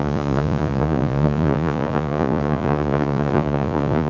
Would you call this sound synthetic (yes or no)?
yes